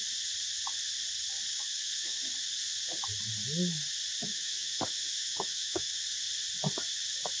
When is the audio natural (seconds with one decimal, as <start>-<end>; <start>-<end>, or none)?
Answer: 0.0-1.5; 2.2-4.2; 5.9-7.4